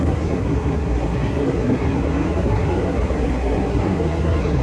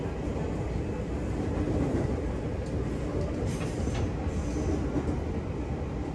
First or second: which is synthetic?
first